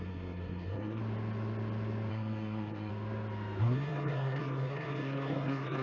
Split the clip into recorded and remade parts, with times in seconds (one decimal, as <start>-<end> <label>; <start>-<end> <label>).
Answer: 0.0-1.0 remade; 1.0-2.1 recorded; 2.1-2.9 remade; 2.9-3.6 recorded; 3.6-5.8 remade